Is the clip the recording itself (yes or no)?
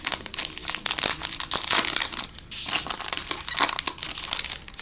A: yes